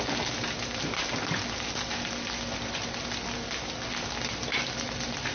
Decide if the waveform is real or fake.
fake